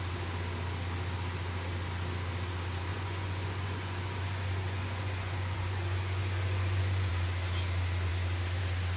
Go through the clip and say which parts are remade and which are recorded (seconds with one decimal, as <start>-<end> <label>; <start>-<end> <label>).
0.0-2.9 recorded; 2.9-7.1 remade; 7.1-9.0 recorded